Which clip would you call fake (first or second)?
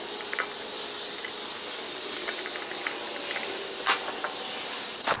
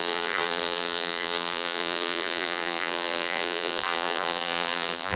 second